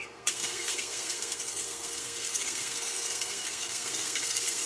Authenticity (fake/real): fake